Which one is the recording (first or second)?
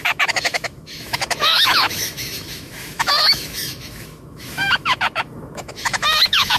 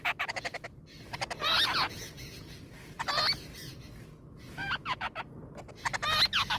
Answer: second